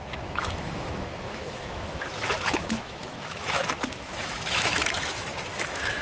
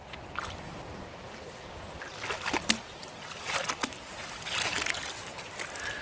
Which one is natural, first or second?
second